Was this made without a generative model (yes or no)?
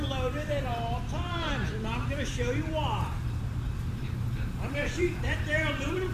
no